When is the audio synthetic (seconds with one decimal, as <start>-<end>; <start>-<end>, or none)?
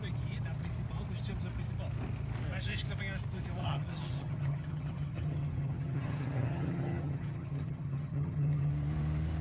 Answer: 3.6-8.7